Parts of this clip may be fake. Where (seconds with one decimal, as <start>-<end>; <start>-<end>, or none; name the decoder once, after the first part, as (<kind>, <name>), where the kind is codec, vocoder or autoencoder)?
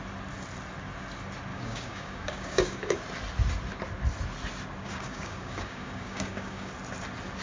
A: 1.5-3.0 (codec, DAC); 4.8-6.7